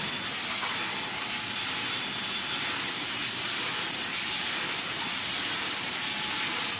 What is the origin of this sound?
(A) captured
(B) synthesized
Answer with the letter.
A